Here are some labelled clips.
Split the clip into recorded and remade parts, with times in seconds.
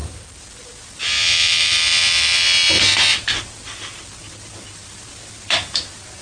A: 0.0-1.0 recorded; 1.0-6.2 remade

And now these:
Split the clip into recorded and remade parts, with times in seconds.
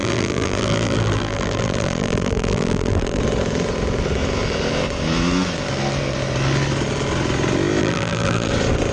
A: 0.0-3.2 remade; 3.2-7.8 recorded; 7.8-8.5 remade; 8.5-8.9 recorded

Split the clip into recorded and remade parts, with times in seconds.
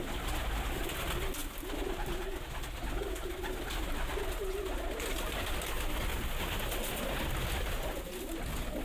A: 0.0-8.8 recorded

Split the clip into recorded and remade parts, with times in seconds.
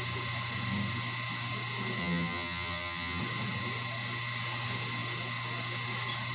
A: 0.0-2.0 recorded; 2.0-3.2 remade; 3.2-6.3 recorded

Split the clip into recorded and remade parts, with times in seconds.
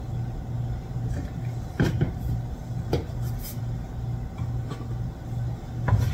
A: 0.0-6.1 recorded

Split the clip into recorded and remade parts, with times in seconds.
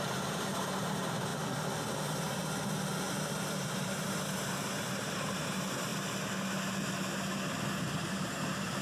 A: 0.0-1.3 remade; 1.3-1.9 recorded; 1.9-2.4 remade; 2.4-3.3 recorded; 3.3-5.9 remade; 5.9-7.8 recorded; 7.8-8.8 remade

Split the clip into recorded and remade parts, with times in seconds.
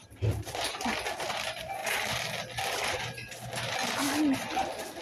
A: 0.0-5.0 recorded